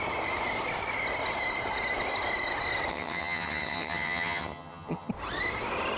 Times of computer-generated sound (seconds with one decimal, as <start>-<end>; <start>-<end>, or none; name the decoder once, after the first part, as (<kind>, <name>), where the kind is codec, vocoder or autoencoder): 2.9-5.1 (vocoder, HiFi-GAN)